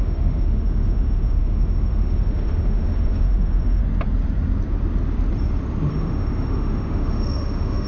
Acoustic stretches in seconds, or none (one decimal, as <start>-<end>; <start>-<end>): 3.8-5.9